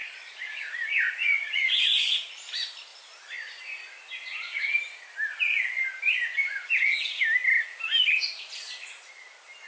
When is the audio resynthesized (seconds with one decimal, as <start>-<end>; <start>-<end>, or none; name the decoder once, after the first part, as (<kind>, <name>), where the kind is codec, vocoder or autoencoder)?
0.0-2.3 (vocoder, Vocos); 6.4-7.2